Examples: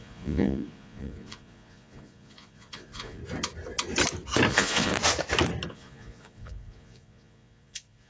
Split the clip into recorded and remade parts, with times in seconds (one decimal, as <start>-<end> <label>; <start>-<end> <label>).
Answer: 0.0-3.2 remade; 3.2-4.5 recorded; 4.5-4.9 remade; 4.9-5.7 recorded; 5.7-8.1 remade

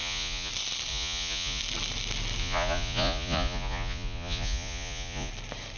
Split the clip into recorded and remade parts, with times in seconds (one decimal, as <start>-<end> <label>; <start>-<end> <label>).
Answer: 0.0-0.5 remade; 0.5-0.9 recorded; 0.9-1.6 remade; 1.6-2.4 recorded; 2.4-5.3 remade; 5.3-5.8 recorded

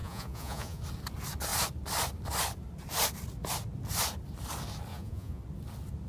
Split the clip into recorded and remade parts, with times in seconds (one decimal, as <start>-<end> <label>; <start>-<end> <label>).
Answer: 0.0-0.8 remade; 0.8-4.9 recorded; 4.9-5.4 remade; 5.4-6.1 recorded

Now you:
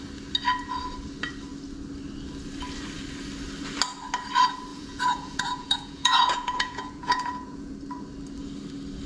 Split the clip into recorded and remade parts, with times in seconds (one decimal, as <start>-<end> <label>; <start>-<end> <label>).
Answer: 0.0-4.7 recorded; 4.7-7.7 remade; 7.7-9.1 recorded

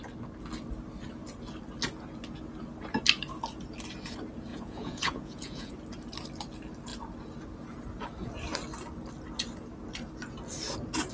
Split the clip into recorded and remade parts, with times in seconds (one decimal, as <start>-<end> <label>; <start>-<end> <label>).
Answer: 0.0-4.5 recorded; 4.5-5.7 remade; 5.7-11.1 recorded

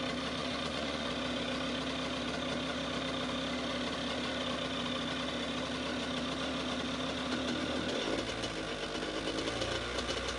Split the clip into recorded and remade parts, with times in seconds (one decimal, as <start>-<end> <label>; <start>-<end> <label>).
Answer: 0.0-0.4 recorded; 0.4-1.1 remade; 1.1-10.4 recorded